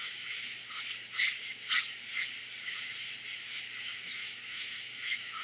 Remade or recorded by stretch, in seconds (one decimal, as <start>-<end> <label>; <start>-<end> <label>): 0.0-0.6 remade; 0.6-3.8 recorded; 3.8-5.4 remade